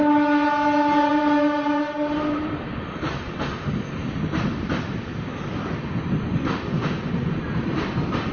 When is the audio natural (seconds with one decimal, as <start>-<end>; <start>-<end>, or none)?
0.0-1.1; 5.5-8.3